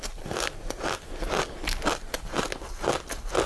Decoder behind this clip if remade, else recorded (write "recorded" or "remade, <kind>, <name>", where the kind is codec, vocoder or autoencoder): recorded